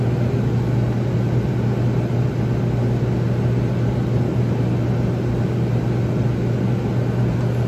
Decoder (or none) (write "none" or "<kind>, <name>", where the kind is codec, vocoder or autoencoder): none